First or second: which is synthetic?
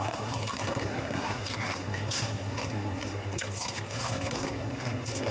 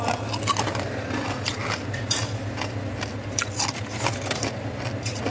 first